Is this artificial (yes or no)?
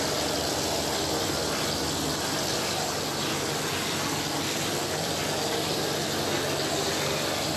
no